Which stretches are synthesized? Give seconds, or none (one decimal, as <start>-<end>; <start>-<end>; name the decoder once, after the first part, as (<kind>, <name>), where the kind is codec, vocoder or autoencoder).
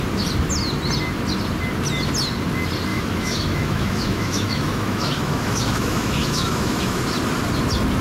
2.9-7.0 (autoencoder, DAC-VAE)